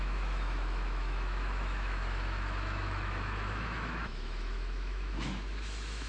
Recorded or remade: remade